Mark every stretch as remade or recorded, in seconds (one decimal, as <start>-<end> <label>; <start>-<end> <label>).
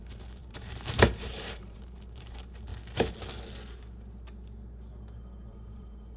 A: 0.0-2.7 remade; 2.7-5.5 recorded; 5.5-6.2 remade